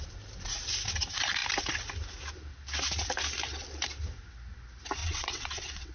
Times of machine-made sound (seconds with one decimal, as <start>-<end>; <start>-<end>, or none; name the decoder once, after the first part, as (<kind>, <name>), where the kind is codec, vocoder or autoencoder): 5.0-5.9 (vocoder, WaveNeXt)